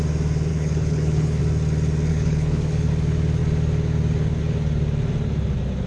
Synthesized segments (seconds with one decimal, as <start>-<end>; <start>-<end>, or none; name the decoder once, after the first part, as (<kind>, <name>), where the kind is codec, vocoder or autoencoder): 0.5-1.4 (codec, HILCodec); 2.1-2.9

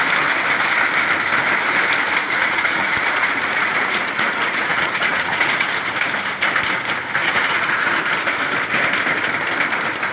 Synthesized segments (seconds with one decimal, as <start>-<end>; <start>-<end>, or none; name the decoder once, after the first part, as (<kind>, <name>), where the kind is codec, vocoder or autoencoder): 2.2-5.7 (vocoder, Vocos); 7.2-8.0

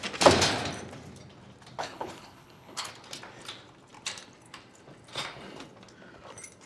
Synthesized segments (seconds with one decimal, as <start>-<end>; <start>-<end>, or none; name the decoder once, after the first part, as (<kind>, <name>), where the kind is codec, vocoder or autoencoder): 1.8-2.9 (codec, HILCodec)